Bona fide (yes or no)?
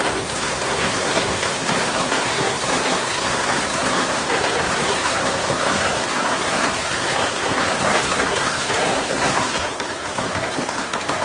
no